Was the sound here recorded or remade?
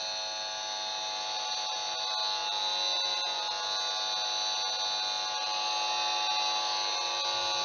recorded